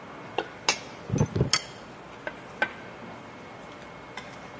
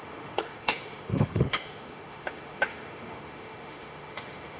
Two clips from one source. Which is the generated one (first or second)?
second